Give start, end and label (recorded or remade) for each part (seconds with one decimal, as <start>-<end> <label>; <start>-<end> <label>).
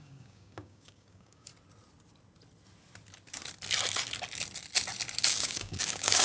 0.0-1.5 remade; 1.5-5.2 recorded; 5.2-6.2 remade